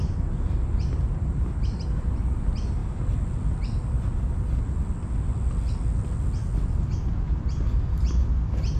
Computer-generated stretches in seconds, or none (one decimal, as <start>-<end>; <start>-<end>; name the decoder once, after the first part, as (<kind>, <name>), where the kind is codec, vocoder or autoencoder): none